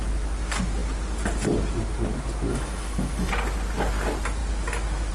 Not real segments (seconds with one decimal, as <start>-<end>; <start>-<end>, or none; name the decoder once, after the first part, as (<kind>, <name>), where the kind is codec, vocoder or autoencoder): 2.5-3.3 (autoencoder, DAC-VAE)